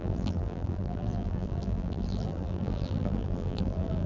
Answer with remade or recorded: remade